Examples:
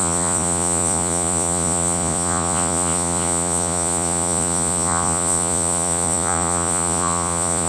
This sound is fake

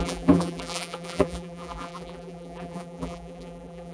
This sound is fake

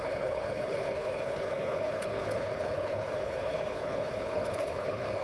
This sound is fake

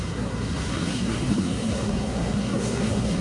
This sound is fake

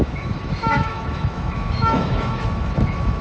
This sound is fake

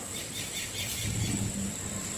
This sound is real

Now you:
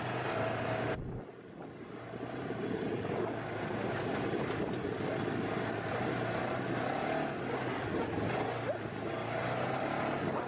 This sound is real